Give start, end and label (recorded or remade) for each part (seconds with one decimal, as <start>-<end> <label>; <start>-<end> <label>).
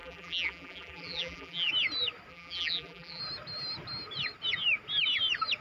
0.0-1.7 remade; 1.7-2.3 recorded; 2.3-3.2 remade; 3.2-5.6 recorded